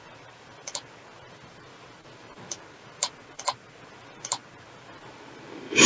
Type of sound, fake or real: real